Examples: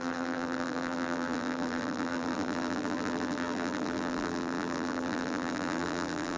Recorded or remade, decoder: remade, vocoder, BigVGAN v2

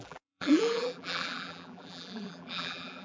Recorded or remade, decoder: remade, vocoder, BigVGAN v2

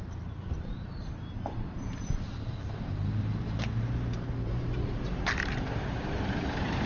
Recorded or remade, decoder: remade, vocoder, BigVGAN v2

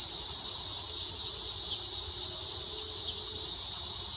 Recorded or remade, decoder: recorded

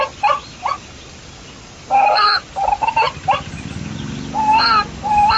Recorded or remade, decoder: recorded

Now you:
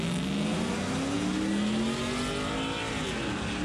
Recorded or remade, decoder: recorded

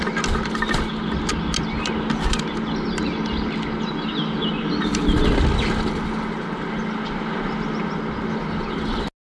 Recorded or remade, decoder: recorded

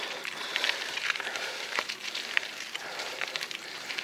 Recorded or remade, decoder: remade, vocoder, BigVGAN v2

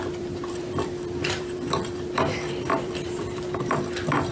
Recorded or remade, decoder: remade, vocoder, BigVGAN v2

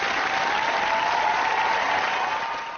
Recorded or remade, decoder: recorded